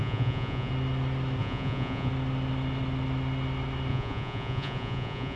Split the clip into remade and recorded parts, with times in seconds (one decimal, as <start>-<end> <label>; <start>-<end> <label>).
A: 0.0-0.7 remade; 0.7-1.4 recorded; 1.4-2.1 remade; 2.1-3.9 recorded; 3.9-5.4 remade